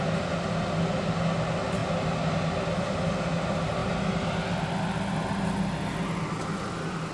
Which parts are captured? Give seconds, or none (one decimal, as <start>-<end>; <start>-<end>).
0.0-7.1